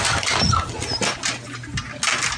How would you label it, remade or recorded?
recorded